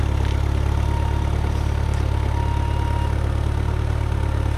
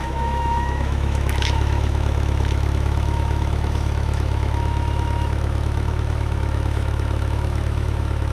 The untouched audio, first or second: first